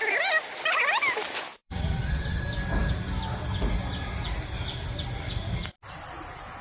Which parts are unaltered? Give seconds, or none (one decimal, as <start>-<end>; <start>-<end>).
0.0-1.6; 2.4-6.6